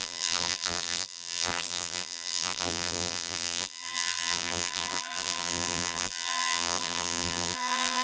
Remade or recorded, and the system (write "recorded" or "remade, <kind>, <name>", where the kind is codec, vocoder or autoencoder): remade, vocoder, BigVGAN v2